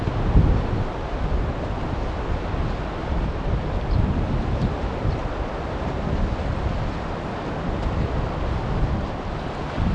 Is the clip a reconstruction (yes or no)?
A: no